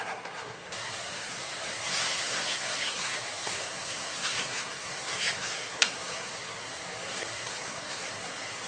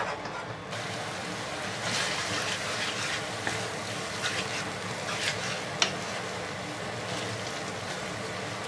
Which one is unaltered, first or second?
second